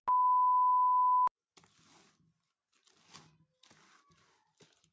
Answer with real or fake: real